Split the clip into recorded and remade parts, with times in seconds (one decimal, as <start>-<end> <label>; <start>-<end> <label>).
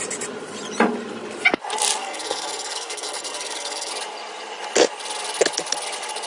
0.0-2.0 recorded; 2.0-3.9 remade; 3.9-6.3 recorded